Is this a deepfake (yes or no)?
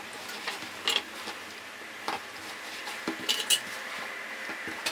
no